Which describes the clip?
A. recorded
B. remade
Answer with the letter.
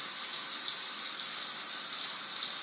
A